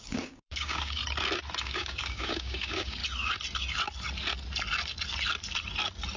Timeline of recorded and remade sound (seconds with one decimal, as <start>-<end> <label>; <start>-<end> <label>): 0.0-1.0 remade; 1.0-1.6 recorded; 1.6-3.0 remade; 3.0-6.2 recorded